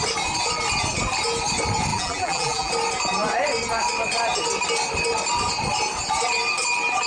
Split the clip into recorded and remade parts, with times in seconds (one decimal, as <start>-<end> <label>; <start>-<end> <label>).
0.0-1.9 recorded; 1.9-2.7 remade; 2.7-7.1 recorded